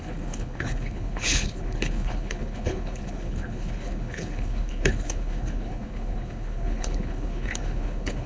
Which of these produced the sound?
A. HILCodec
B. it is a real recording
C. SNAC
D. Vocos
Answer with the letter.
A